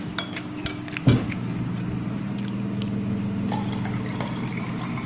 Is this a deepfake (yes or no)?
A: no